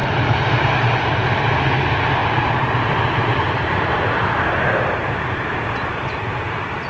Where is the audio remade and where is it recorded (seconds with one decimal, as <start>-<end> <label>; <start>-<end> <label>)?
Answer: 0.0-1.2 remade; 1.2-2.2 recorded; 2.2-6.3 remade; 6.3-6.9 recorded